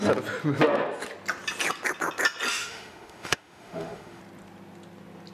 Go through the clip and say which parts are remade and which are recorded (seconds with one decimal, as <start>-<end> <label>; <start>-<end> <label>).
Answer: 0.0-2.5 recorded; 2.5-4.2 remade; 4.2-5.3 recorded